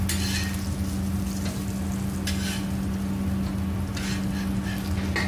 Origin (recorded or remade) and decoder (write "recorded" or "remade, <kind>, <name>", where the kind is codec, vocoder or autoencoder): recorded